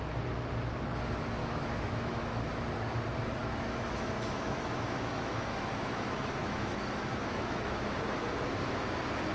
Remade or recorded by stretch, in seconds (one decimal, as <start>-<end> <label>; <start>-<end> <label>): 0.0-1.4 recorded; 1.4-2.5 remade; 2.5-3.4 recorded; 3.4-8.2 remade; 8.2-9.3 recorded